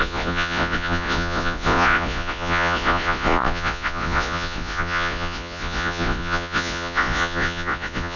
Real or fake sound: fake